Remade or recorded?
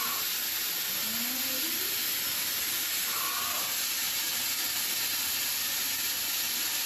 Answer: recorded